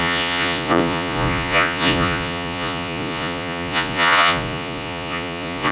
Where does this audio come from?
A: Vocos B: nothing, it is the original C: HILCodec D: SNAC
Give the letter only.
A